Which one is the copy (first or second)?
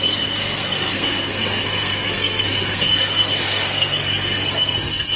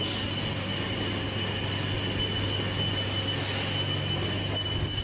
first